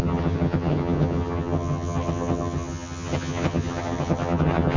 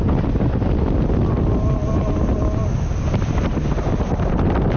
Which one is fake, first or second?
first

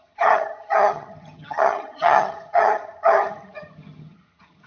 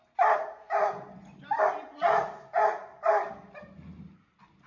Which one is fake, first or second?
first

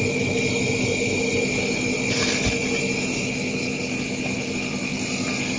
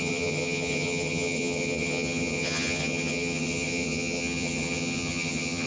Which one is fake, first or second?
second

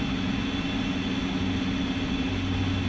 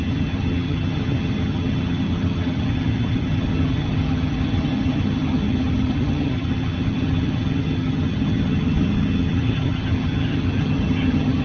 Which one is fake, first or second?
second